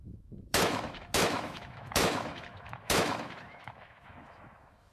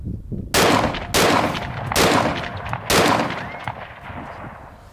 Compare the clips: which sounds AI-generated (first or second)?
first